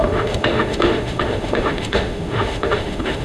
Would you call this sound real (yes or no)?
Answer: no